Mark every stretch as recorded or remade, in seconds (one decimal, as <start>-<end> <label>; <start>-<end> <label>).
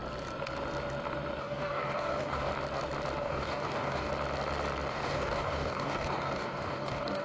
0.0-1.4 recorded; 1.4-2.5 remade; 2.5-3.2 recorded; 3.2-4.1 remade; 4.1-4.9 recorded; 4.9-7.2 remade